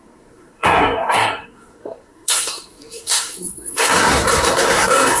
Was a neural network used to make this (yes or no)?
yes